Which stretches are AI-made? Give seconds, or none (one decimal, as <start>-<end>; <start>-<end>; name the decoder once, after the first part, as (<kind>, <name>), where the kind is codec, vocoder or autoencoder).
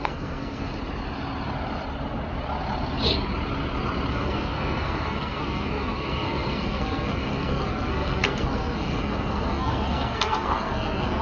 0.0-0.7 (codec, SNAC); 4.1-11.2